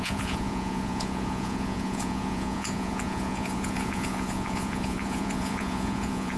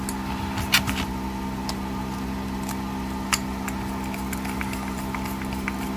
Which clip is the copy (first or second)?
first